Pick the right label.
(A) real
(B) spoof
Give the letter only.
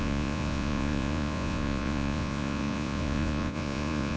B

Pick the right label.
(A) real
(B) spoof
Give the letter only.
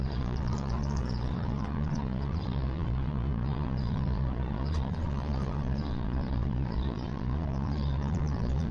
B